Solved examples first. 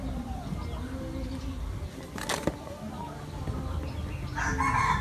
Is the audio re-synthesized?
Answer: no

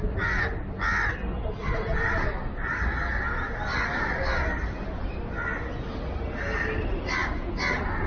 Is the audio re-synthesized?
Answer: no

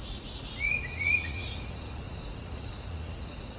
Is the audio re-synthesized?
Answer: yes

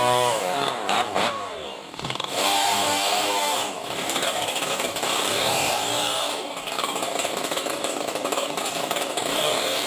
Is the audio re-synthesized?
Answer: yes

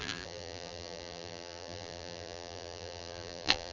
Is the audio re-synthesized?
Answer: yes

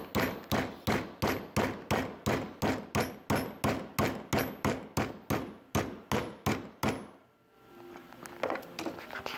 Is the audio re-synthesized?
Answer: no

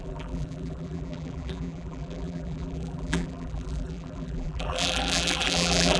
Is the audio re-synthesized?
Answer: yes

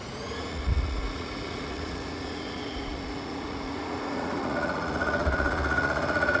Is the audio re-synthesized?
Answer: yes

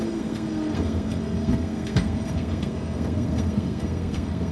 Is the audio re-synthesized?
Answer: yes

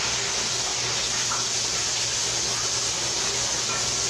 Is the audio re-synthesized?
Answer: no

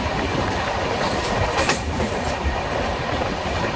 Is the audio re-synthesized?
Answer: yes